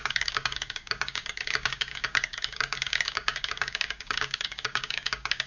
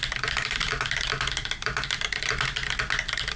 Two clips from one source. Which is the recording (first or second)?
second